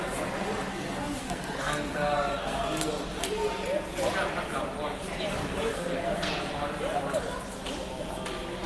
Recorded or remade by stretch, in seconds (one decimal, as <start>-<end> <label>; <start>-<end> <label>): 0.0-0.7 recorded; 0.7-2.9 remade; 2.9-5.4 recorded; 5.4-6.3 remade; 6.3-8.7 recorded